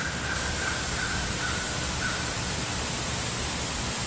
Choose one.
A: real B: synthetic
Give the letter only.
A